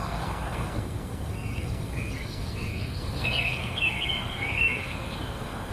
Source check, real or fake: fake